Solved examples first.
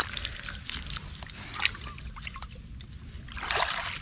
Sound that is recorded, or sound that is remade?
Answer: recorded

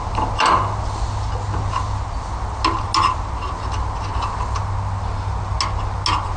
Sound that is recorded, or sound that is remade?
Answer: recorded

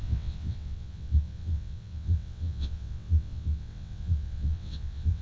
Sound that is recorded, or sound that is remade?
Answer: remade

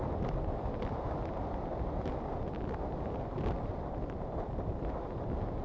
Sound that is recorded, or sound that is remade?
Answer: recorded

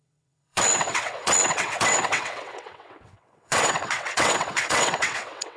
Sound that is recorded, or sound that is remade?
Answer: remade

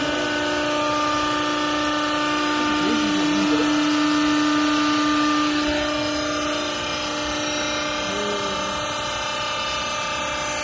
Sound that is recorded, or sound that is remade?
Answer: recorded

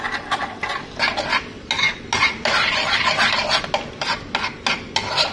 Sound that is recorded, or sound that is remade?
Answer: recorded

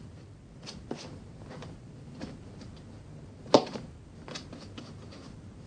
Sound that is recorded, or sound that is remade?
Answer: recorded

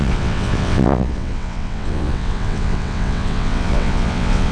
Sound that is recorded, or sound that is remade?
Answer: remade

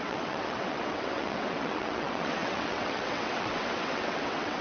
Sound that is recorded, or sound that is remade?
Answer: remade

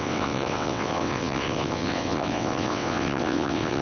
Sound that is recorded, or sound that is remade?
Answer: remade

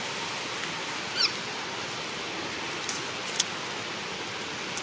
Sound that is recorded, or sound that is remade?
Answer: recorded